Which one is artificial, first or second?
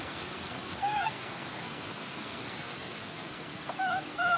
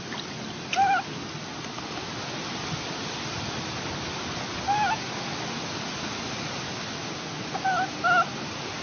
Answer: first